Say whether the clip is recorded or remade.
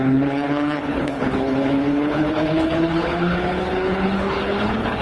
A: remade